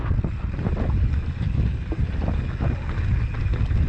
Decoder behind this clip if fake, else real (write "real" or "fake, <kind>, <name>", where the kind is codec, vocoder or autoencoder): real